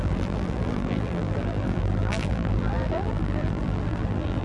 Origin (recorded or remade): remade